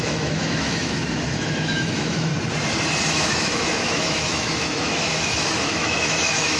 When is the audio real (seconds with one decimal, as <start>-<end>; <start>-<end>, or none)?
2.3-3.1